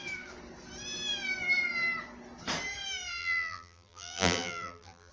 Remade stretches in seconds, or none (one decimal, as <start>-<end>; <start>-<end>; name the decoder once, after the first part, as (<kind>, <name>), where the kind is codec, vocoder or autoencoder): 3.2-5.1 (vocoder, BigVGAN v2)